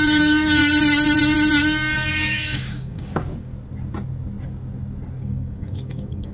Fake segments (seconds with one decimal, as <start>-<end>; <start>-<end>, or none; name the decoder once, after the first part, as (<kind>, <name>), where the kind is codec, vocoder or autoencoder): 0.0-0.6 (codec, DAC); 2.1-3.5; 5.2-6.3